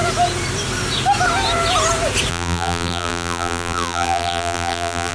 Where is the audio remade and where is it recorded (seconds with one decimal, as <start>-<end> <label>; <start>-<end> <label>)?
0.0-2.3 recorded; 2.3-5.1 remade

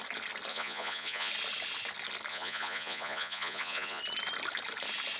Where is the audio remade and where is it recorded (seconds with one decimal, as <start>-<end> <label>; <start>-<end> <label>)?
0.0-0.5 recorded; 0.5-1.3 remade; 1.3-2.3 recorded; 2.3-4.0 remade; 4.0-5.2 recorded

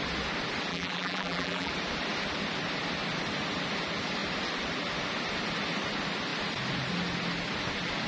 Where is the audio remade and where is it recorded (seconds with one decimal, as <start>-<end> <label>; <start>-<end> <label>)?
0.0-0.7 recorded; 0.7-1.7 remade; 1.7-8.1 recorded

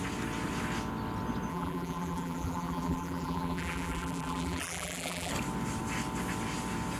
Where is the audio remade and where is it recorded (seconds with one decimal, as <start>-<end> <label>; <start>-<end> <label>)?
0.0-1.5 recorded; 1.5-5.3 remade; 5.3-7.0 recorded

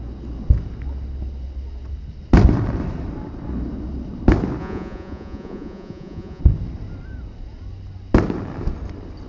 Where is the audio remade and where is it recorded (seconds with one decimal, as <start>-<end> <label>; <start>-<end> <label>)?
0.0-4.6 recorded; 4.6-6.4 remade; 6.4-9.3 recorded

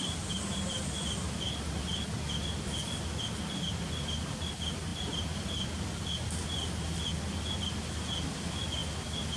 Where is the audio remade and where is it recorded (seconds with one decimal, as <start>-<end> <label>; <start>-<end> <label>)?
0.0-9.4 recorded

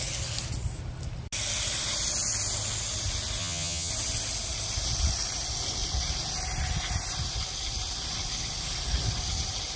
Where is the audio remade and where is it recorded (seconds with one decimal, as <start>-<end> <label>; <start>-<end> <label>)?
0.0-3.4 recorded; 3.4-3.9 remade; 3.9-9.8 recorded

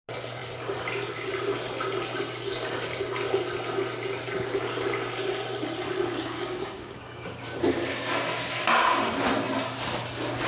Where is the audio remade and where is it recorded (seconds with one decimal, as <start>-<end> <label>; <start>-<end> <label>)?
0.0-6.2 recorded; 6.2-7.6 remade; 7.6-10.5 recorded